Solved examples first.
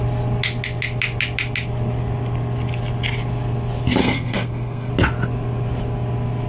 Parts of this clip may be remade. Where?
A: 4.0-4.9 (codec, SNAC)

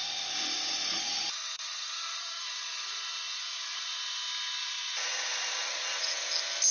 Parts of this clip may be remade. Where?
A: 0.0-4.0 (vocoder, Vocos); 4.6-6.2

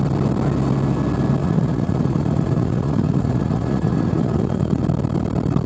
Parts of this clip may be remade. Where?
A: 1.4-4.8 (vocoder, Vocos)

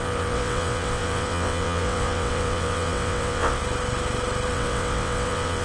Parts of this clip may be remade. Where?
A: 0.0-3.6 (vocoder, WaveNeXt); 4.5-5.6

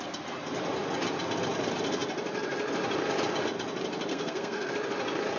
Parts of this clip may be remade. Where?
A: 4.1-4.7 (codec, SNAC)

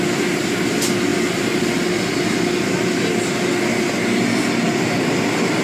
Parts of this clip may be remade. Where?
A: none